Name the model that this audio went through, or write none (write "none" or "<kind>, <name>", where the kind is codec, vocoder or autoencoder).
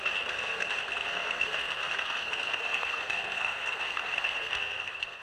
codec, SNAC